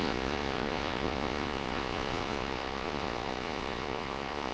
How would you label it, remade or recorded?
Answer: remade